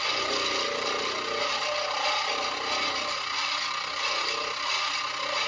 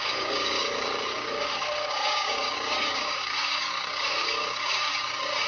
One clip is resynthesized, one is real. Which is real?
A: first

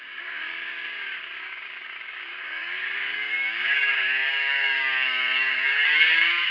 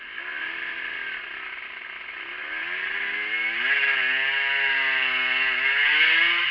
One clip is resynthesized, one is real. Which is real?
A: second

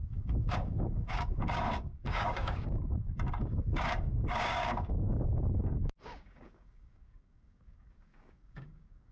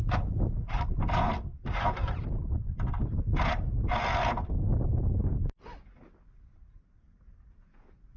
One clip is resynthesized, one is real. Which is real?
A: second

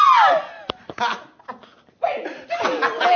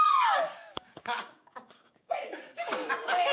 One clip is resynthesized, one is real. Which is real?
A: first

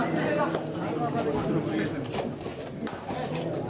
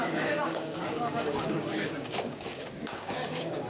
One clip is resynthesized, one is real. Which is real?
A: first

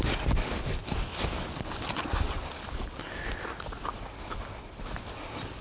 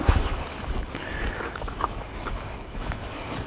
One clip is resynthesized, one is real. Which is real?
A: first